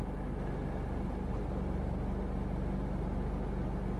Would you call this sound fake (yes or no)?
no